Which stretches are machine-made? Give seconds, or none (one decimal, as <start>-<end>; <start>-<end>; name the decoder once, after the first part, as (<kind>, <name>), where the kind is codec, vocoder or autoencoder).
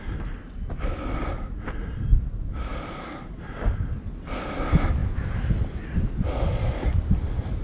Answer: 0.0-7.6 (vocoder, BigVGAN v2)